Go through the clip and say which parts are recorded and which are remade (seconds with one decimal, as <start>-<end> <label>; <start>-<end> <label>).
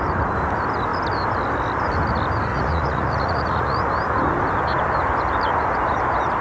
0.0-2.5 recorded; 2.5-3.8 remade; 3.8-6.4 recorded